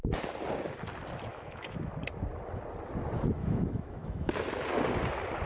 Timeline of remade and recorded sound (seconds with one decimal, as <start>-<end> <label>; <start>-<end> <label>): 0.0-1.3 recorded; 1.3-1.9 remade; 1.9-3.4 recorded; 3.4-4.3 remade; 4.3-5.5 recorded